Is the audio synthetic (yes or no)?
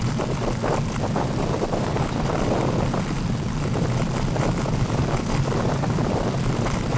no